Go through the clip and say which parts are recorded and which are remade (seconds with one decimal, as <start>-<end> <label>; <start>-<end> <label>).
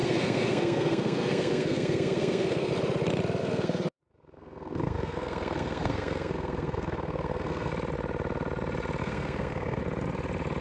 0.0-2.7 remade; 2.7-3.4 recorded; 3.4-7.7 remade; 7.7-9.0 recorded; 9.0-9.8 remade; 9.8-10.6 recorded